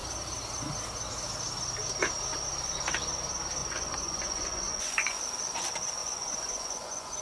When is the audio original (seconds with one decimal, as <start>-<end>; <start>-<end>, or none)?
0.0-3.6; 5.2-6.0